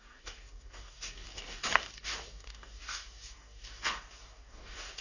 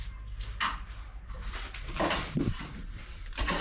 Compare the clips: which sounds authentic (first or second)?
second